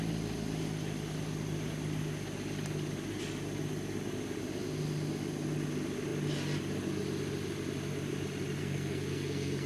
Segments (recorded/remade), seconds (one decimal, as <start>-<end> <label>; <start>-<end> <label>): 0.0-8.6 recorded; 8.6-9.7 remade

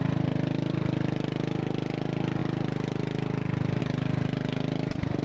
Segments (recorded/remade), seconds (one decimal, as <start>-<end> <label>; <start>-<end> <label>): 0.0-5.2 recorded

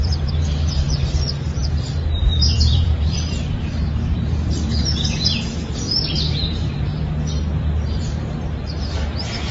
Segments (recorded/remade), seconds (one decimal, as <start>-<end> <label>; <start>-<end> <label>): 0.0-6.9 remade; 6.9-7.9 recorded; 7.9-9.5 remade

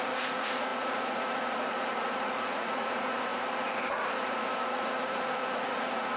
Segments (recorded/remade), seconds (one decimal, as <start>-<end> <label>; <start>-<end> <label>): 0.0-6.2 remade